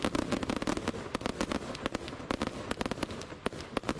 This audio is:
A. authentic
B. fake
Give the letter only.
A